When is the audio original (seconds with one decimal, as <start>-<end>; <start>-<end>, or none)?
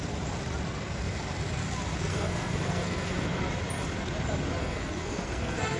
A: 0.0-2.1; 3.4-4.6